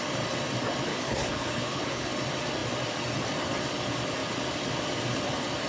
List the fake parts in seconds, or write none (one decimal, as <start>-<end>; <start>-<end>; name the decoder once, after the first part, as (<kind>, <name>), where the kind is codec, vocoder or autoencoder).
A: 0.9-2.1 (codec, HILCodec)